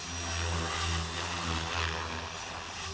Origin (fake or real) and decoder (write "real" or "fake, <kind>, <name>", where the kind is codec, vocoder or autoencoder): real